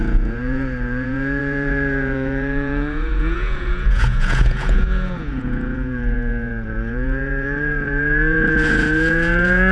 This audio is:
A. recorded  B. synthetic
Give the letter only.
B